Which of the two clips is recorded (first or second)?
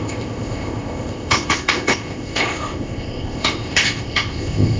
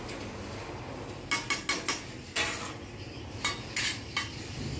second